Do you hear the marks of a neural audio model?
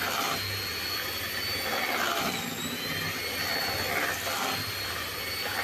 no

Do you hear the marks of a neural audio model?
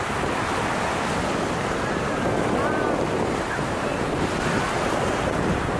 no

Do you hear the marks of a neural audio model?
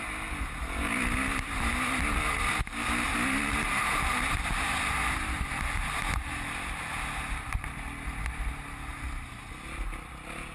no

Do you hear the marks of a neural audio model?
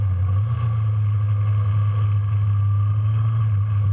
no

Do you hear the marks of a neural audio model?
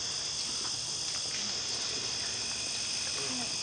no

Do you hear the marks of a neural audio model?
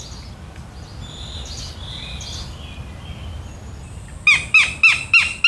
no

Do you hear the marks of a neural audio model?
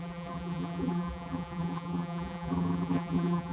yes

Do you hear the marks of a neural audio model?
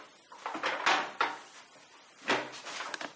no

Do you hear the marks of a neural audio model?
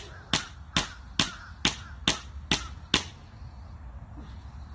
no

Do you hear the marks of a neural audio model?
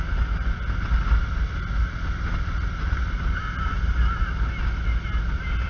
no